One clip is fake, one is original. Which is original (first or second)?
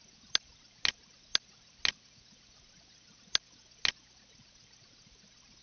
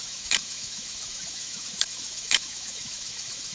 first